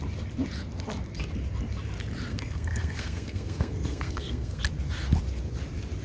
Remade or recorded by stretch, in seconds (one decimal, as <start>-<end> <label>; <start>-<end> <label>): 0.0-2.3 recorded; 2.3-4.6 remade; 4.6-6.0 recorded